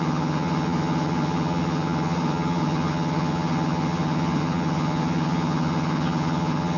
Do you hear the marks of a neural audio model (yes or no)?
yes